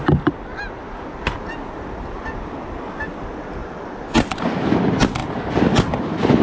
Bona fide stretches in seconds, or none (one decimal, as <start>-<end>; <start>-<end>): 0.0-6.4